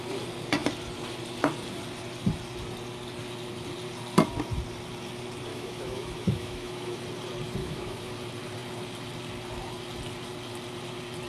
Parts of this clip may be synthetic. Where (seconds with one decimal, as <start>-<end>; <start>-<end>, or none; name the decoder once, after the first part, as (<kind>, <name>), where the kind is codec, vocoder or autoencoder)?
5.5-7.0 (autoencoder, DAC-VAE); 7.6-8.1